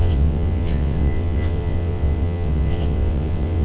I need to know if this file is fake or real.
fake